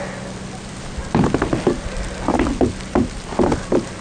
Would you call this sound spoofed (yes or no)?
no